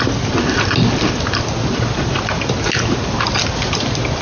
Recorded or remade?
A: recorded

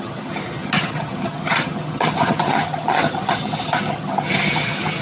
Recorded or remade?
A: remade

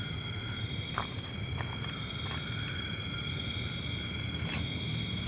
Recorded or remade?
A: recorded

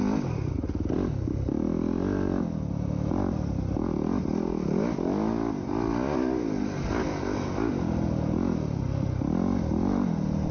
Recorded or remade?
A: recorded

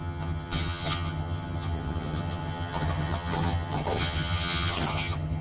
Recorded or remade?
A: remade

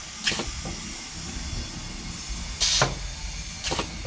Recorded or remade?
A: recorded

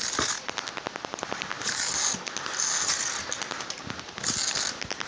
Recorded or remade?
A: recorded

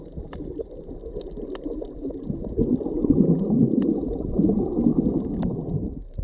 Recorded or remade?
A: recorded